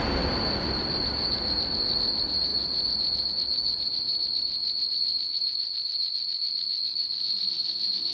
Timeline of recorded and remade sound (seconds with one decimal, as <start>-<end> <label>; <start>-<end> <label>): 0.0-8.1 recorded